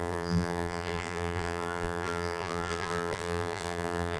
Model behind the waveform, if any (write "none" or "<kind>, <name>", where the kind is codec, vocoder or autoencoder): vocoder, BigVGAN v2